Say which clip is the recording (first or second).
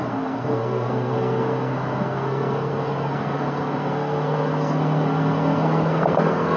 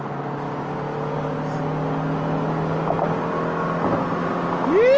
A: second